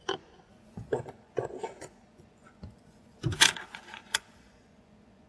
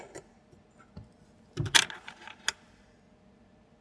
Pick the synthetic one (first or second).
first